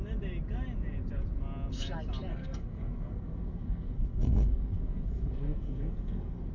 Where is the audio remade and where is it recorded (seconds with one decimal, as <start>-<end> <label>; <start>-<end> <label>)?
0.0-2.3 recorded; 2.3-6.5 remade